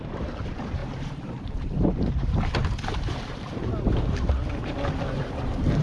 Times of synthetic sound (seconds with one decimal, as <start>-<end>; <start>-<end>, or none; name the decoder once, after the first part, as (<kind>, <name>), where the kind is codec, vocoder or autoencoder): 0.0-5.8 (vocoder, BigVGAN v2)